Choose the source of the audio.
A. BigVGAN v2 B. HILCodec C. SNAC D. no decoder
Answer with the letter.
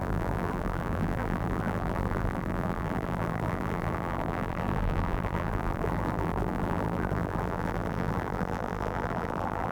A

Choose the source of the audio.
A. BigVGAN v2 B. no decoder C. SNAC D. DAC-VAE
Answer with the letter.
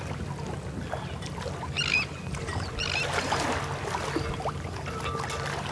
B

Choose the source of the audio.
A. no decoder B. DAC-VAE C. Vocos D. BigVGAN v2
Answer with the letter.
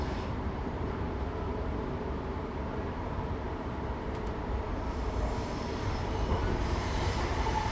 D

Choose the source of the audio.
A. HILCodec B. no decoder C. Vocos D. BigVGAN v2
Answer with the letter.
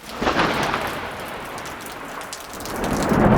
B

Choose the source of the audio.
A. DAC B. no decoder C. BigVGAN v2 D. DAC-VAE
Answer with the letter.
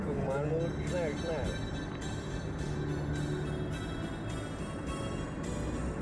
B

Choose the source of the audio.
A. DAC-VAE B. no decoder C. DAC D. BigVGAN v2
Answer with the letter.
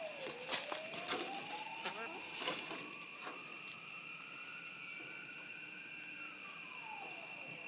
B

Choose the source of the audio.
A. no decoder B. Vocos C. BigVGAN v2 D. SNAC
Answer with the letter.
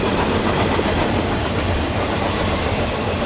C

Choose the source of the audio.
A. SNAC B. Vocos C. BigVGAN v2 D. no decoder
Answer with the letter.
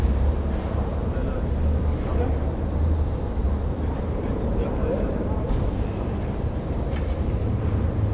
C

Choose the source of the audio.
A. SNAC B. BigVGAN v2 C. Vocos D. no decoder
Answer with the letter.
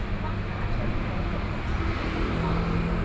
D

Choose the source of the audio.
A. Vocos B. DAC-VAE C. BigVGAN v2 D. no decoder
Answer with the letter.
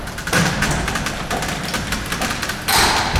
D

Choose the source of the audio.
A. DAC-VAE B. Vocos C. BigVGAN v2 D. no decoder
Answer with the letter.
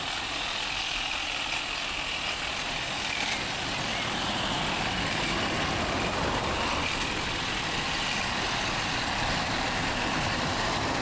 D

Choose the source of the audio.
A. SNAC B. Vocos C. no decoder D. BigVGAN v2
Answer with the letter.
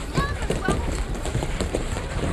D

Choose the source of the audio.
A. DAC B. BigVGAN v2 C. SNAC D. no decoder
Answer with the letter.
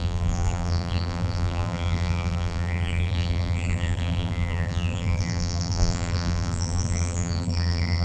B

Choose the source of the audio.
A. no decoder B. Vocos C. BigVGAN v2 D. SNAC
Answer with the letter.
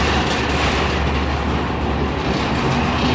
A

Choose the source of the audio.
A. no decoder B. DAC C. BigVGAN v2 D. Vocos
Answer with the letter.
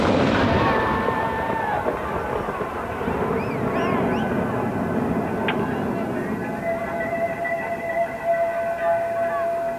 A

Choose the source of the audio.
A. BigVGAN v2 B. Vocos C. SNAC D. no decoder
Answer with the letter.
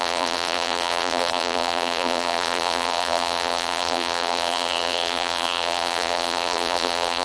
A